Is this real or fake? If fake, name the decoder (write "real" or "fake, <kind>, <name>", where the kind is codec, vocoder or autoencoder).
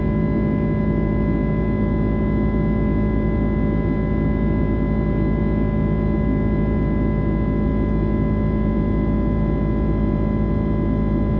real